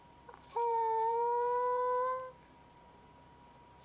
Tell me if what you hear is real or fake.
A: fake